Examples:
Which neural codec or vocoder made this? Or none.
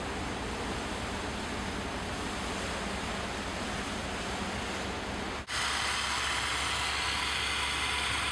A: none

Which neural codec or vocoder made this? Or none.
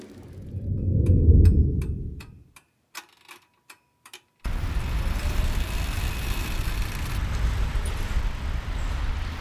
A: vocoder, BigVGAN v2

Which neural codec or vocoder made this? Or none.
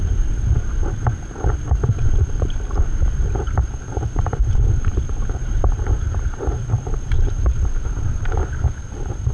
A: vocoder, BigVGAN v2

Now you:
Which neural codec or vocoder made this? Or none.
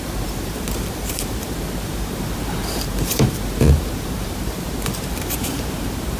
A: vocoder, BigVGAN v2